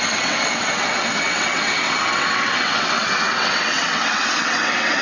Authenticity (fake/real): fake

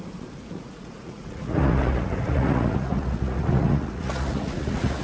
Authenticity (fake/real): fake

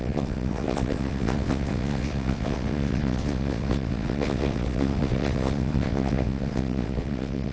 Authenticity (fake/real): fake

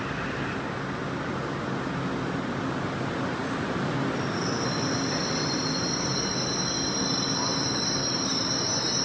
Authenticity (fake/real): real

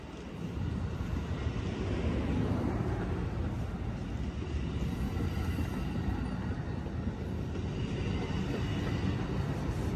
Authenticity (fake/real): real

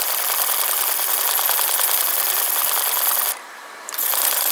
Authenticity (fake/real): real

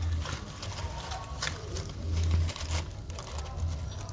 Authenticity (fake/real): real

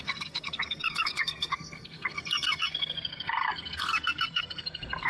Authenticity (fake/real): fake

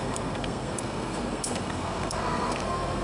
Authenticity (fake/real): fake